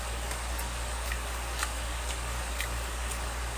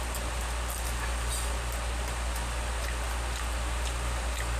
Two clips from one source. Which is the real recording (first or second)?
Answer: second